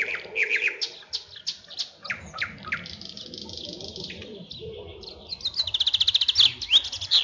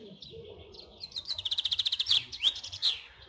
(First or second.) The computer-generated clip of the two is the second